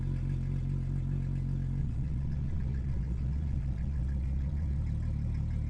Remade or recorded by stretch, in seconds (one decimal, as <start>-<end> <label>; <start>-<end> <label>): 0.0-1.8 recorded; 1.8-4.8 remade; 4.8-5.7 recorded